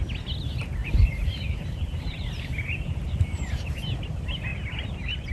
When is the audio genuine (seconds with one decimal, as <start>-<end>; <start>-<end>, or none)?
0.0-0.8; 4.0-5.3